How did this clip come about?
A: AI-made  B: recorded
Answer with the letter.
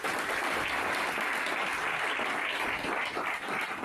B